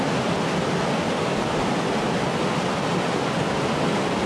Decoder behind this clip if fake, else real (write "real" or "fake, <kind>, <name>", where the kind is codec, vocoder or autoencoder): real